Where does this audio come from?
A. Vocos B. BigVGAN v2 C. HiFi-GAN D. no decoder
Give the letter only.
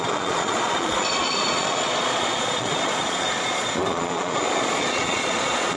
A